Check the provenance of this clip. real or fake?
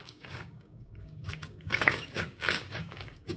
fake